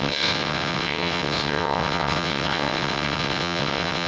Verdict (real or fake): fake